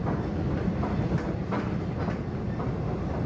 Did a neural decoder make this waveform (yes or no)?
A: no